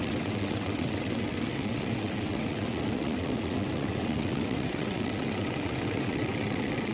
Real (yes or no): no